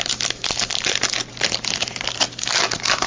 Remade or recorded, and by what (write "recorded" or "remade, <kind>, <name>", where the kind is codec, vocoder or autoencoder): recorded